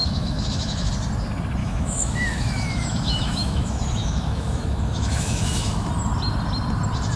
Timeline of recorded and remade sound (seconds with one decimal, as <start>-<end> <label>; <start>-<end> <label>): 0.0-0.9 remade; 0.9-1.6 recorded; 1.6-5.9 remade; 5.9-7.2 recorded